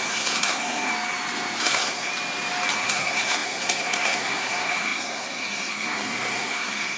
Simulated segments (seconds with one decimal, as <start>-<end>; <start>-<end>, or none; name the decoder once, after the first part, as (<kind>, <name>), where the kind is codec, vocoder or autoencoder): 0.0-0.9 (codec, SNAC); 1.6-2.1; 2.8-7.0